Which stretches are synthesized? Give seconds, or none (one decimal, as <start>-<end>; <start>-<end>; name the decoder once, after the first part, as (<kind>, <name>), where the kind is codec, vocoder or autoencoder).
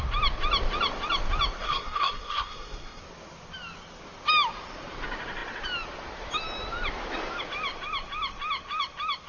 1.6-3.0 (codec, SNAC)